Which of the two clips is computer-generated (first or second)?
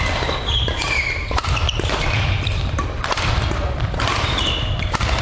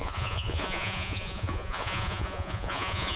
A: second